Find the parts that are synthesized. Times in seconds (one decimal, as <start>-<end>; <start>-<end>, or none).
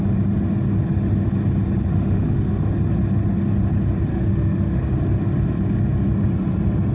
1.9-2.7; 4.1-4.8